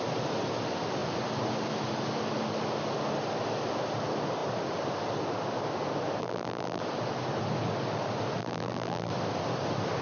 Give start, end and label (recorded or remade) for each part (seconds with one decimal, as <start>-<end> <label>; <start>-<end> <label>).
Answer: 0.0-6.2 recorded; 6.2-6.8 remade; 6.8-8.4 recorded; 8.4-9.1 remade; 9.1-10.0 recorded